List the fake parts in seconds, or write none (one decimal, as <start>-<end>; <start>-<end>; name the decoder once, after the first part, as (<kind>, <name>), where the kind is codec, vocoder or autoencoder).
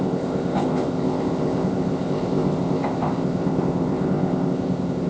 0.0-5.1 (codec, ZipCodec)